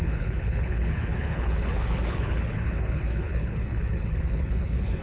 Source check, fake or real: fake